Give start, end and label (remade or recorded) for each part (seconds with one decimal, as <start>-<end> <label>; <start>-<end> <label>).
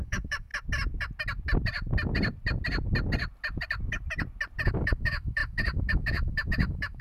0.0-0.5 remade; 0.5-4.7 recorded; 4.7-7.0 remade